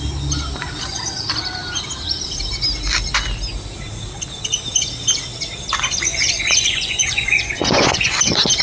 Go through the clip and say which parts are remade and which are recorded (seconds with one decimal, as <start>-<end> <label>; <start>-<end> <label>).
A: 0.0-6.1 recorded; 6.1-8.2 remade; 8.2-8.6 recorded